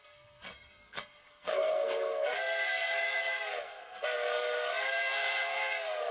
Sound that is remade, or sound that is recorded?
remade